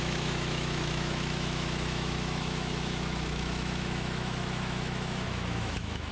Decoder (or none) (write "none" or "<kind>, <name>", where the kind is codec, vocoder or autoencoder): autoencoder, DAC-VAE